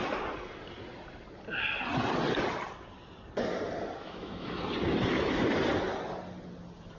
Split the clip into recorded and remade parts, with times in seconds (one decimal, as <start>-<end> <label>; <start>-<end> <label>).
0.0-4.0 recorded; 4.0-4.6 remade; 4.6-7.0 recorded